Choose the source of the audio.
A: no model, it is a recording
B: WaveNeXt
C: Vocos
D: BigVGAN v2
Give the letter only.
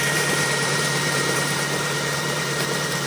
D